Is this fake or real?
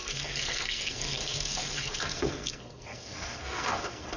fake